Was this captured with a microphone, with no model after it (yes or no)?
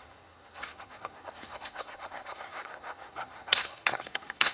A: no